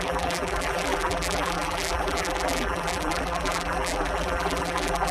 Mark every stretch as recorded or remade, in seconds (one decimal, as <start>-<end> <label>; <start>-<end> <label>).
0.0-5.1 remade